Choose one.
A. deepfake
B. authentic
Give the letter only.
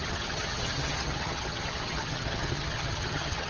A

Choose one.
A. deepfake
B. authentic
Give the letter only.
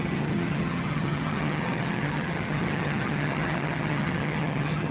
A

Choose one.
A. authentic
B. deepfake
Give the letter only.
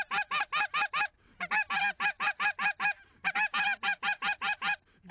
A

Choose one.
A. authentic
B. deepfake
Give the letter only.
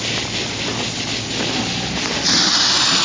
A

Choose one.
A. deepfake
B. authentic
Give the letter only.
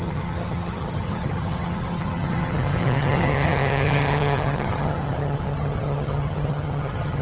A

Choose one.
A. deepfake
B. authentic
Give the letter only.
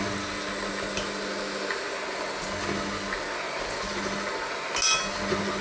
B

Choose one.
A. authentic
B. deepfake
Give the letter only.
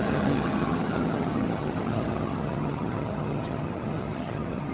B